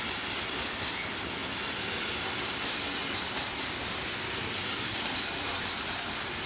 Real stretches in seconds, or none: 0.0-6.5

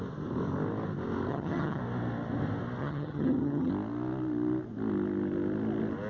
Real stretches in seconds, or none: 0.0-1.3; 1.8-2.8; 3.7-6.1

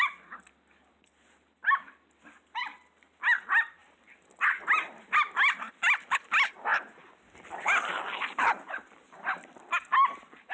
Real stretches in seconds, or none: 0.0-10.5

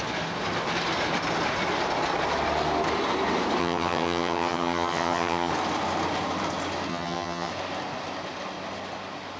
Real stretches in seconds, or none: 0.0-3.6; 5.5-6.9; 7.5-9.4